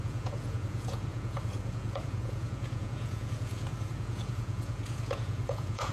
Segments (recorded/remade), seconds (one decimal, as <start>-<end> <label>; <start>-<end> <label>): 0.0-5.9 remade

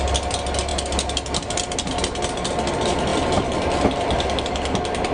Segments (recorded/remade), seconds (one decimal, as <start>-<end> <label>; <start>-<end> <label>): 0.0-5.1 recorded

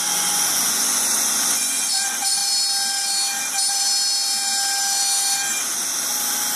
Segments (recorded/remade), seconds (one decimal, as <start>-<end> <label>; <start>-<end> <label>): 0.0-2.4 remade; 2.4-6.6 recorded

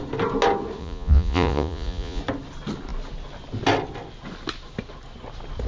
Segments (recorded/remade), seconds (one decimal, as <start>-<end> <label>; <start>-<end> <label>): 0.0-0.8 recorded; 0.8-2.2 remade; 2.2-5.7 recorded

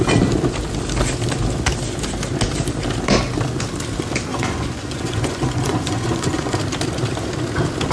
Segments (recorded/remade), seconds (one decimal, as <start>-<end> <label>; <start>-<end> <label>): 0.0-4.3 recorded; 4.3-6.6 remade; 6.6-7.9 recorded

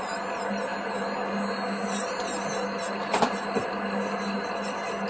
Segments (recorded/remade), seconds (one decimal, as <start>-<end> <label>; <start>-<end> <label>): 0.0-5.1 recorded

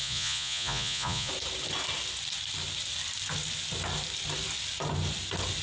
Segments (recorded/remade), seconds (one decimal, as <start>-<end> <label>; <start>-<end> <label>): 0.0-1.3 remade; 1.3-5.6 recorded

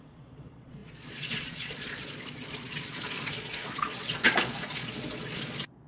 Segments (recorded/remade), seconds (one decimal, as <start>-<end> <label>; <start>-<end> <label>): 0.0-5.9 remade